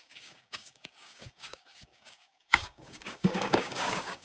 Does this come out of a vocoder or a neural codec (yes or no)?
yes